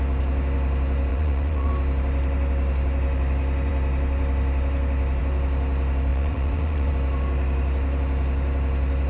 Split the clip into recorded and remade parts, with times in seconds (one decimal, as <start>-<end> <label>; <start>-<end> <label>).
0.0-1.1 recorded; 1.1-1.7 remade; 1.7-6.1 recorded; 6.1-6.9 remade; 6.9-9.1 recorded